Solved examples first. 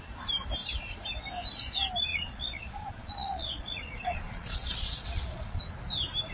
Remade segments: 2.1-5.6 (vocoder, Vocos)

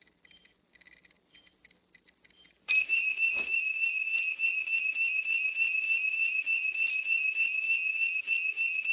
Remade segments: 0.0-4.0 (vocoder, BigVGAN v2); 4.8-7.8

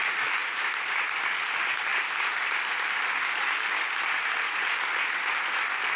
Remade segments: none

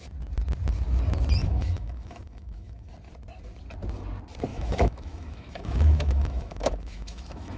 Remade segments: 1.4-2.9 (autoencoder, DAC-VAE); 4.5-7.6

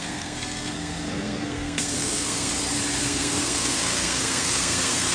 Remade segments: 0.0-2.5 (codec, SNAC); 3.0-5.1

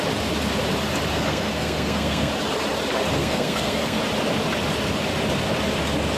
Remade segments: 1.1-2.3 (codec, SNAC); 3.2-4.0

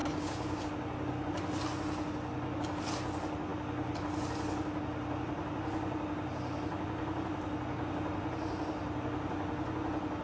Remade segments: 0.0-0.6 (codec, DAC)